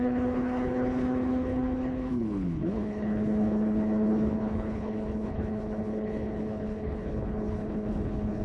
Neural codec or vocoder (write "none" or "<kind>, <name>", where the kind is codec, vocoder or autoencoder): codec, HILCodec